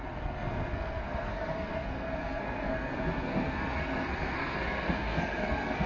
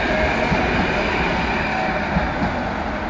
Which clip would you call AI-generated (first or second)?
first